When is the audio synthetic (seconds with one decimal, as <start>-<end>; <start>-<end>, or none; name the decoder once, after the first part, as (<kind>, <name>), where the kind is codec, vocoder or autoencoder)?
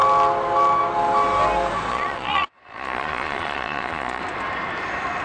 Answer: 1.9-4.2 (vocoder, Vocos)